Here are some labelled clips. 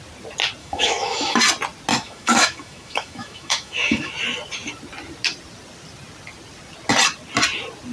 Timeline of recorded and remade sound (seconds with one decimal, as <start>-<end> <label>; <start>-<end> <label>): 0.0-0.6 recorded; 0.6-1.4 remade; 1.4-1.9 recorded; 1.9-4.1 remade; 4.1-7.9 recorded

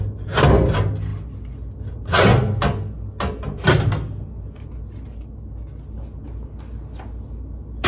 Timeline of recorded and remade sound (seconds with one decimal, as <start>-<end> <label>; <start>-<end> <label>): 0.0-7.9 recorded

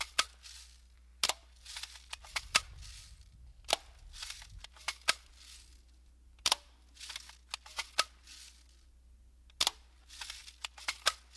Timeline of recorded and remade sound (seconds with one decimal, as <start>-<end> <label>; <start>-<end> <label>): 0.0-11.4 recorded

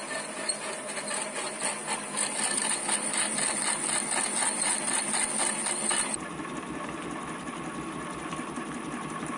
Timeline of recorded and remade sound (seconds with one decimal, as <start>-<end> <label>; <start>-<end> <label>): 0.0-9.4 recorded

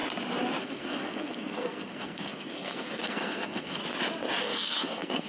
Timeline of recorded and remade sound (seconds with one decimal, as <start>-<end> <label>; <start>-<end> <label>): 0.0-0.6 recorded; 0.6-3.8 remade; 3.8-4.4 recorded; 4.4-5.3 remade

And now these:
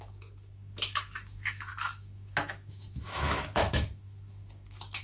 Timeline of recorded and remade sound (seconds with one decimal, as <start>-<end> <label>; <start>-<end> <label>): 0.0-5.0 remade